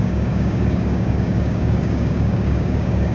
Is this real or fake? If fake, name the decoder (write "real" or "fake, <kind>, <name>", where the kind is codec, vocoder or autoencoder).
fake, codec, DAC